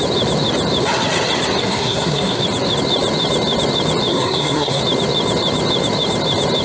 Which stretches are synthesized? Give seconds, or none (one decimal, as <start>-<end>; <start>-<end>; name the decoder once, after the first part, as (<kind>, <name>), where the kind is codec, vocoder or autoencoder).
1.6-2.4 (codec, SNAC); 4.1-4.8